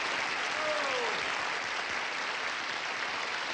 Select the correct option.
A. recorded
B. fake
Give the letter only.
A